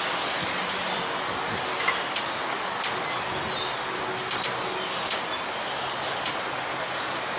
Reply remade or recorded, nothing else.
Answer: recorded